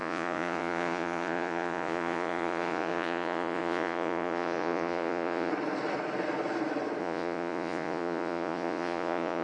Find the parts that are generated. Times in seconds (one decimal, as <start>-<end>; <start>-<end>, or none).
0.0-5.5; 7.0-9.4